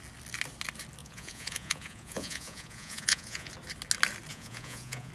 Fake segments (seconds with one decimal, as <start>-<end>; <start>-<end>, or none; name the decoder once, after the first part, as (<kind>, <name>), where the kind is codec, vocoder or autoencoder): 1.0-3.5 (vocoder, Vocos); 4.3-5.1